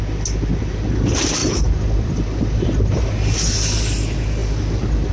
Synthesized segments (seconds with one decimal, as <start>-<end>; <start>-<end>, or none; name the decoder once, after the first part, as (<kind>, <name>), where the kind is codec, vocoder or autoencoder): 1.4-3.1 (vocoder, BigVGAN v2)